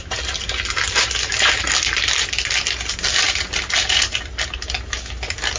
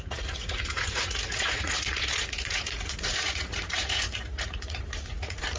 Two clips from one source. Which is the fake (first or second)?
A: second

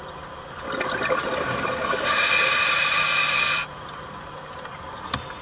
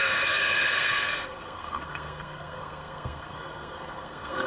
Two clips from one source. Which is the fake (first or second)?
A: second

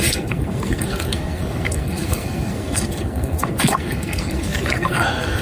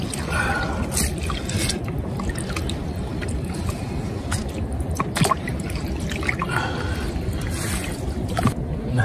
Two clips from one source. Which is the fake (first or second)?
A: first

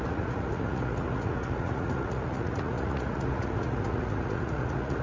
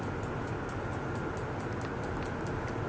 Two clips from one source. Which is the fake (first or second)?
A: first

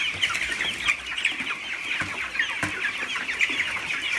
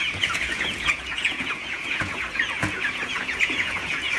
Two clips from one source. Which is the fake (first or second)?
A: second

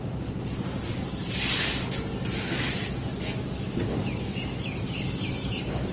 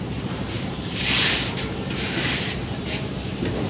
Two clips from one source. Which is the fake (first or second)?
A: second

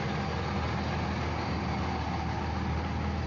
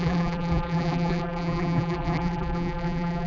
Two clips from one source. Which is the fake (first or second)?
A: second